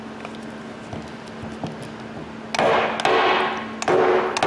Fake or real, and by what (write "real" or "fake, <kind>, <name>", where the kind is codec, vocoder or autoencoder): real